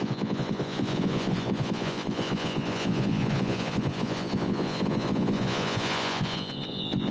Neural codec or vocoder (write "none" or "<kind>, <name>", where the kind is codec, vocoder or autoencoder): vocoder, Vocos